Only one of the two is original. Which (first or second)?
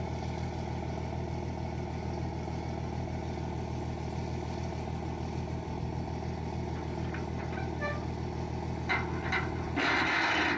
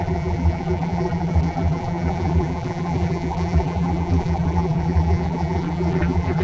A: first